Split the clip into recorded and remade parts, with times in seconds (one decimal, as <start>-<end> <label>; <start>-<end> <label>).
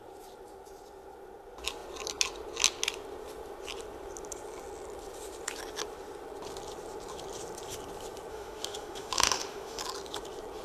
0.0-8.3 recorded; 8.3-9.8 remade; 9.8-10.6 recorded